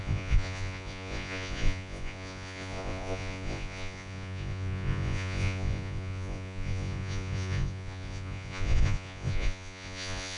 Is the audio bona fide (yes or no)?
no